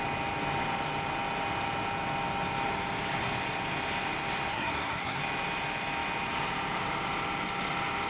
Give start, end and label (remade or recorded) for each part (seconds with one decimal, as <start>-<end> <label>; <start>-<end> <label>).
0.0-4.5 recorded; 4.5-5.2 remade; 5.2-8.1 recorded